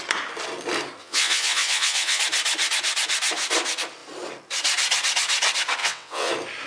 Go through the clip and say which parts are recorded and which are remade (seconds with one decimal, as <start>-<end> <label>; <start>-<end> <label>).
0.0-1.0 recorded; 1.0-2.2 remade; 2.2-5.8 recorded; 5.8-6.3 remade; 6.3-6.7 recorded